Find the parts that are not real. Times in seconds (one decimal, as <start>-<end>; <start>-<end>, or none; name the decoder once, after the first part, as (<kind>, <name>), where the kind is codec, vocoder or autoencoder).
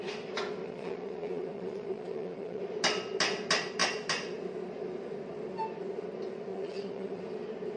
0.6-2.6 (vocoder, Vocos); 6.5-7.2